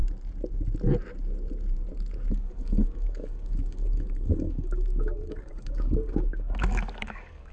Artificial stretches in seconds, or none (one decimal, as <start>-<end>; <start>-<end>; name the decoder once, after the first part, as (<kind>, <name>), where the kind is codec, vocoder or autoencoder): 2.3-7.5 (codec, DAC)